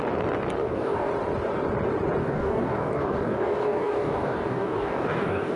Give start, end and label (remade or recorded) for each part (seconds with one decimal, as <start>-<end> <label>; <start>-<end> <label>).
0.0-0.6 recorded; 0.6-1.1 remade; 1.1-2.2 recorded; 2.2-5.6 remade